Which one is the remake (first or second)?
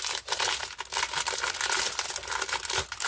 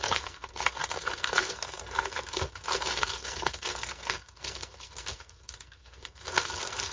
second